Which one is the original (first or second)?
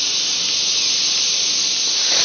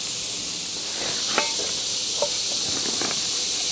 second